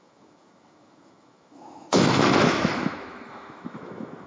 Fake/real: fake